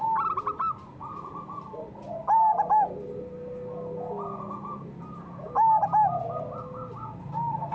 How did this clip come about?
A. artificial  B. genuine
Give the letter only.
B